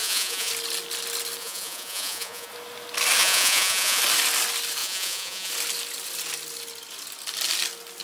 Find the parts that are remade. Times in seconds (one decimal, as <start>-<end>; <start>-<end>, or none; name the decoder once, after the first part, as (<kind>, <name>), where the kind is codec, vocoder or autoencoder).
0.0-0.5 (vocoder, Vocos); 1.4-2.5; 3.2-4.0; 4.8-5.5